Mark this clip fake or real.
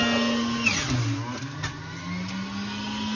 real